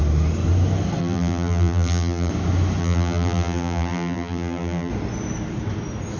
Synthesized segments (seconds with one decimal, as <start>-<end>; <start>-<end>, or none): 1.0-2.3; 2.8-4.9